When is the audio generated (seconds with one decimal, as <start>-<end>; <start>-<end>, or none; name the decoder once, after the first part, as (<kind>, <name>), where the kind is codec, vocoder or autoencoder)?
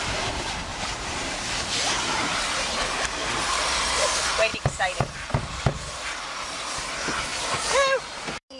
0.7-3.1 (vocoder, BigVGAN v2); 4.5-5.8; 7.3-8.6